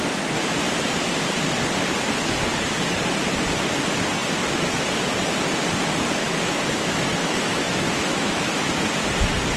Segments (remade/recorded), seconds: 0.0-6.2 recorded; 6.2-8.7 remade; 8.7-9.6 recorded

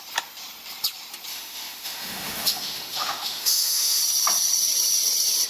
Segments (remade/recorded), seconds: 0.0-1.3 recorded; 1.3-4.0 remade; 4.0-5.5 recorded

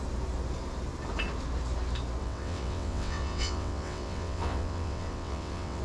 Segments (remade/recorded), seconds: 0.0-2.2 recorded; 2.2-5.8 remade

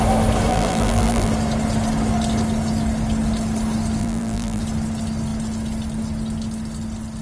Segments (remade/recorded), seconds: 0.0-0.5 recorded; 0.5-1.3 remade; 1.3-4.0 recorded; 4.0-4.6 remade; 4.6-7.2 recorded

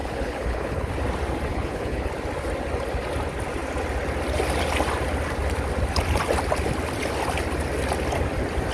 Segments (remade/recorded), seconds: 0.0-0.9 remade; 0.9-1.5 recorded; 1.5-2.1 remade; 2.1-8.7 recorded